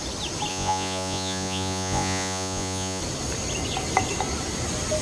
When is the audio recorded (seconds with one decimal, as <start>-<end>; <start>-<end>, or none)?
0.0-0.5; 3.0-5.0